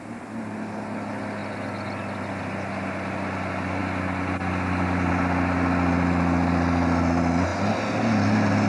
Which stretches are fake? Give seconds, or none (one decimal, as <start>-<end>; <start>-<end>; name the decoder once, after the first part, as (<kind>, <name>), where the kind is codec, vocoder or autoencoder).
none